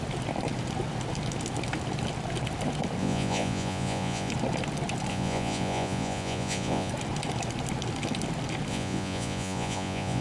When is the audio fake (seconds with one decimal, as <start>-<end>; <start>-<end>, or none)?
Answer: 3.0-4.3; 5.1-6.9; 8.7-10.2